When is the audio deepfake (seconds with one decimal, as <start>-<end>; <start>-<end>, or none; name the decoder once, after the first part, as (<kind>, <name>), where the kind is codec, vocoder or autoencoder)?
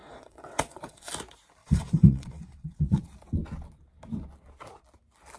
0.0-1.1 (vocoder, WaveNeXt); 1.6-3.0